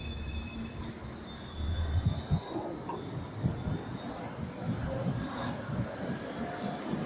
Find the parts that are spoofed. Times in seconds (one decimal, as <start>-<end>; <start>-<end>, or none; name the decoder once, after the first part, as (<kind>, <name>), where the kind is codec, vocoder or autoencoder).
0.0-0.7 (autoencoder, DAC-VAE)